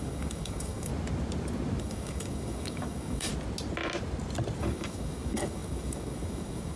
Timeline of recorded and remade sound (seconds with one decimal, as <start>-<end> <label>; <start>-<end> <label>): 0.0-0.9 remade; 0.9-1.8 recorded; 1.8-3.3 remade; 3.3-4.6 recorded; 4.6-6.8 remade